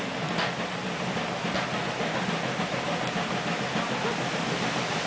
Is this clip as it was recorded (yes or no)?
yes